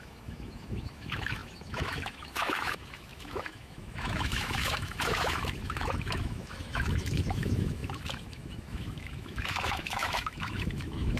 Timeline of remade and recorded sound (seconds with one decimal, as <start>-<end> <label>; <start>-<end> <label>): 0.0-11.2 remade

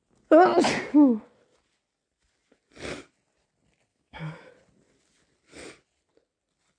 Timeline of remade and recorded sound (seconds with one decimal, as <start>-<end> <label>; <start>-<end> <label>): 0.0-3.9 recorded; 3.9-4.5 remade; 4.5-6.8 recorded

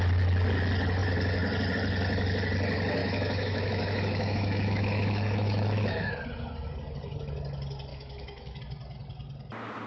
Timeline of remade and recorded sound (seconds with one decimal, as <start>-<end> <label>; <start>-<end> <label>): 0.0-3.0 recorded; 3.0-6.1 remade; 6.1-7.9 recorded; 7.9-8.6 remade; 8.6-9.9 recorded